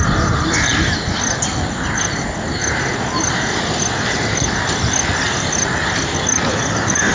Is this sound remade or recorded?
recorded